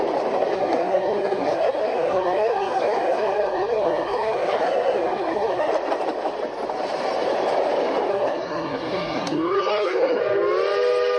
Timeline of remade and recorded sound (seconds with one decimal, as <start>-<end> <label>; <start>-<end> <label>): 0.0-0.5 recorded; 0.5-5.7 remade; 5.7-8.1 recorded; 8.1-10.2 remade; 10.2-11.2 recorded